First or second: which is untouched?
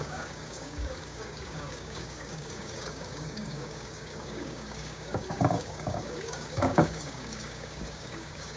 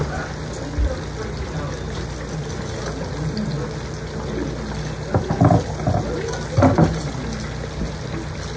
second